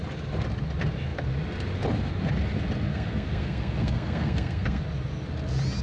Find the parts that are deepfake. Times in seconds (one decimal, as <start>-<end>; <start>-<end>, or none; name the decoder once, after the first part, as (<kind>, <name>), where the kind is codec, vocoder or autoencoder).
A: 2.9-4.8 (codec, SNAC)